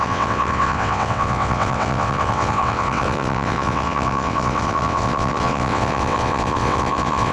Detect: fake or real fake